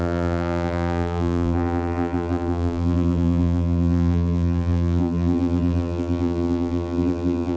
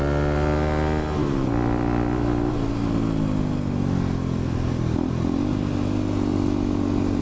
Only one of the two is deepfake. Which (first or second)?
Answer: first